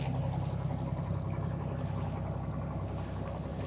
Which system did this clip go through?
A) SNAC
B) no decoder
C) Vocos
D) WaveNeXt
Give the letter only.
B